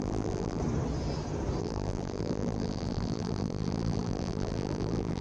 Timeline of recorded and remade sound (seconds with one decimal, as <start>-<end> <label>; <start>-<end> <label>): 0.0-0.6 remade; 0.6-1.6 recorded; 1.6-5.2 remade

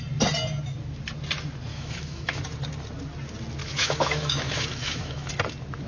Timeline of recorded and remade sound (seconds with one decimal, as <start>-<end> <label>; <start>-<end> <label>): 0.0-1.7 recorded; 1.7-2.4 remade; 2.4-3.6 recorded; 3.6-5.3 remade; 5.3-5.9 recorded

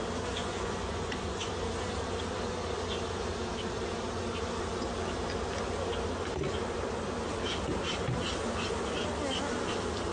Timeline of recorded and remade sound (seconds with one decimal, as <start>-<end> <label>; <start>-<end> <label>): 0.0-0.4 recorded; 0.4-1.5 remade; 1.5-10.1 recorded

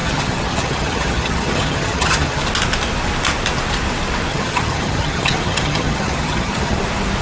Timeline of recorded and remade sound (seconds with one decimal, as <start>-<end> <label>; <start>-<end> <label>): 0.0-2.4 remade; 2.4-4.3 recorded; 4.3-6.8 remade; 6.8-7.2 recorded

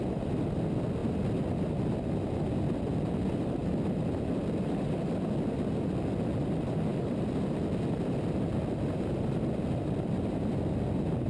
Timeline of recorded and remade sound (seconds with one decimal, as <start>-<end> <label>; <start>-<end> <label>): 0.0-11.3 recorded

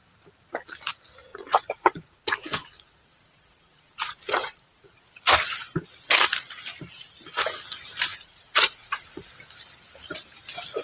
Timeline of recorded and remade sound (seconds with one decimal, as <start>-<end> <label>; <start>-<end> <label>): 0.0-1.3 recorded; 1.3-5.0 remade; 5.0-8.1 recorded; 8.1-9.3 remade; 9.3-10.8 recorded